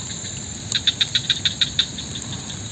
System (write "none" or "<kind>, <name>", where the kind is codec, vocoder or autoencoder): vocoder, BigVGAN v2